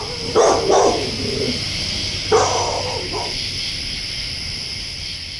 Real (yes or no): no